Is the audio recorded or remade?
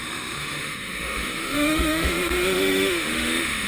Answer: remade